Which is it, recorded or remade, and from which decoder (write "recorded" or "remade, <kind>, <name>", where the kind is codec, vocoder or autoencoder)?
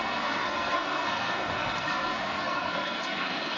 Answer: remade, codec, SNAC